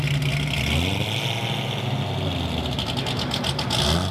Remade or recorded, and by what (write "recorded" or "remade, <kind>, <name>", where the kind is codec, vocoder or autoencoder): recorded